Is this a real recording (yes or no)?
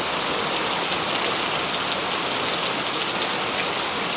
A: yes